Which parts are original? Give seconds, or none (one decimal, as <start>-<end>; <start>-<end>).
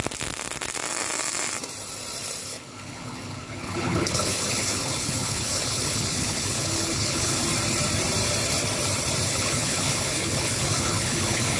0.0-2.5; 7.4-9.3